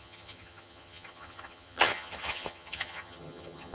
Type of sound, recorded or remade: remade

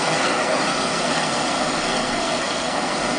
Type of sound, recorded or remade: remade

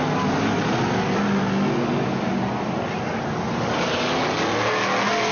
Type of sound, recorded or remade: recorded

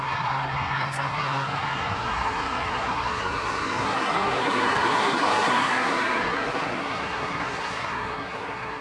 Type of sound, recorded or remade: remade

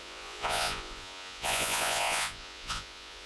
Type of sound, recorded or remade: remade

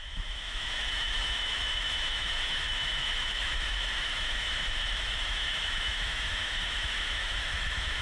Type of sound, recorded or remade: remade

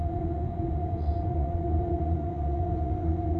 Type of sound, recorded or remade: remade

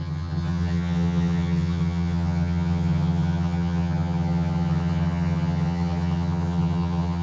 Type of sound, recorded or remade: remade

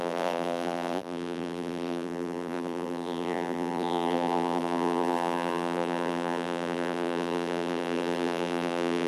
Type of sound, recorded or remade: remade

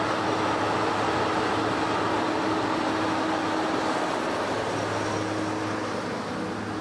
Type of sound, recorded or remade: recorded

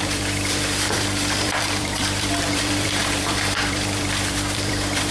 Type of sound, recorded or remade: remade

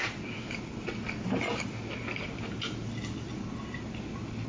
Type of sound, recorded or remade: recorded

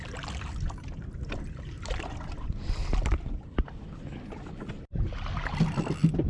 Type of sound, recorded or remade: recorded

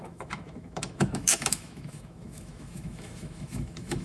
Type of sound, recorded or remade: remade